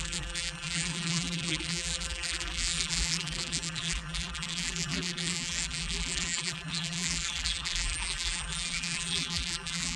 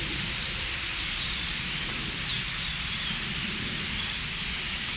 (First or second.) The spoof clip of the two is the first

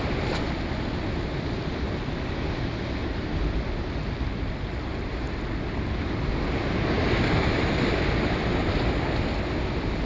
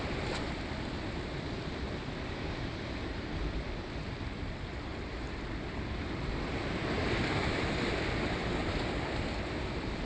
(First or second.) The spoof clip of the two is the second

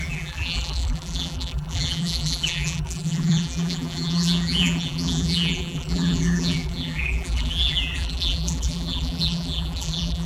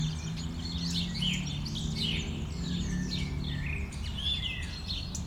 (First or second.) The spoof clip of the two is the first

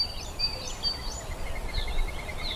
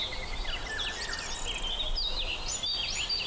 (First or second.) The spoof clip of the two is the first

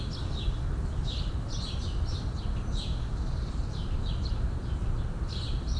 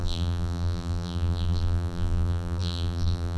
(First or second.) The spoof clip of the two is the second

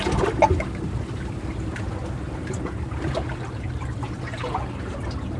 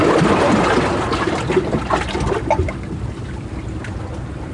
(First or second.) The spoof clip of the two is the first